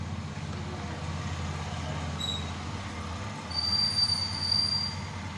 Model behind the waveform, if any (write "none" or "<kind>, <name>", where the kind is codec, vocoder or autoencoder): none